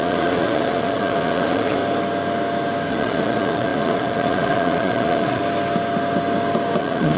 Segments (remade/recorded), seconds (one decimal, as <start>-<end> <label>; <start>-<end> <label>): 0.0-1.8 remade; 1.8-2.9 recorded; 2.9-5.4 remade; 5.4-6.8 recorded; 6.8-7.2 remade